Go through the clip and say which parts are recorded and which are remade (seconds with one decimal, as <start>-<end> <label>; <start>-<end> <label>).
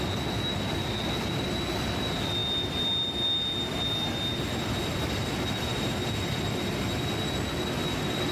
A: 0.0-8.3 recorded